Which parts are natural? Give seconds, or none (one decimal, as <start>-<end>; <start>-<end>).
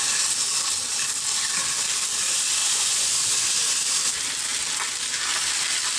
0.0-2.6; 3.5-6.0